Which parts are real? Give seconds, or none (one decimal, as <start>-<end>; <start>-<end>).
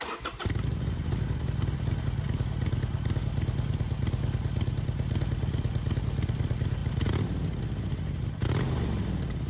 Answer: 0.0-9.5